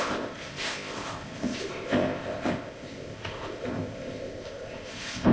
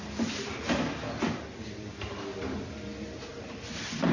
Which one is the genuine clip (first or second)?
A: second